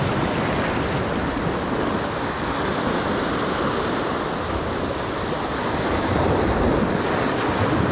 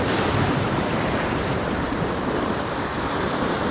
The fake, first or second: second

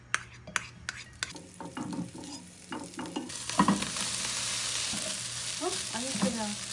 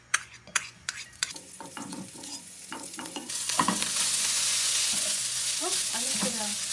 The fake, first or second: second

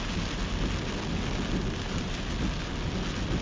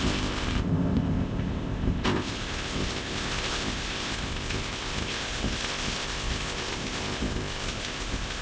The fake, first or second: second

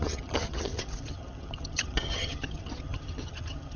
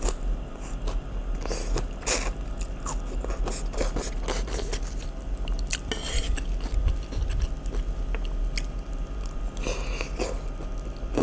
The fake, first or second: first